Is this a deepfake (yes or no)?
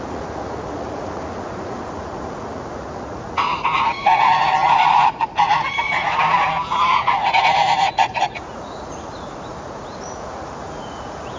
yes